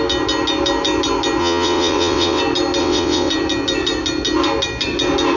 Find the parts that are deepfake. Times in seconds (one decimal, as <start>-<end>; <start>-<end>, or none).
1.4-2.4; 2.8-3.3